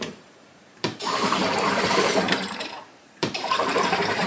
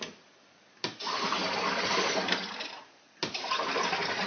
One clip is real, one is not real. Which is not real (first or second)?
first